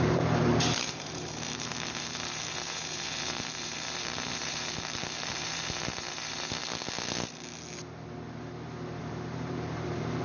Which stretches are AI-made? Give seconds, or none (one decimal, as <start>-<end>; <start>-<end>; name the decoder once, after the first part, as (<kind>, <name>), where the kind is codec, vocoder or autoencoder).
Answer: 0.0-6.6 (vocoder, BigVGAN v2); 9.0-10.2